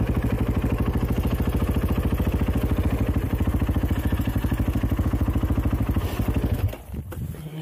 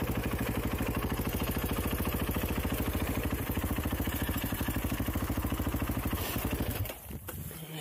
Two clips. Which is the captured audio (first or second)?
first